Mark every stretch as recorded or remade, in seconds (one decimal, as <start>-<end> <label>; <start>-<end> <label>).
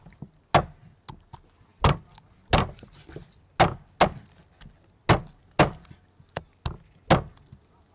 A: 0.0-7.9 recorded